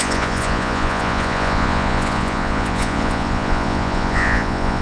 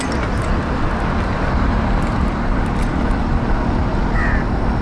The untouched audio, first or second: second